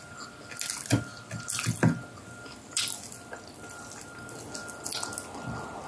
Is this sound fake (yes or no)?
no